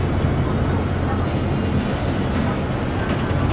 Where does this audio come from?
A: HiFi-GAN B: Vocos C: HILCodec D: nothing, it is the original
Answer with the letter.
D